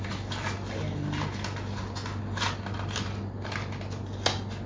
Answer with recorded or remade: recorded